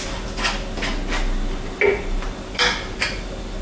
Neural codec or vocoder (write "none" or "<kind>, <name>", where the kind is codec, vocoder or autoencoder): none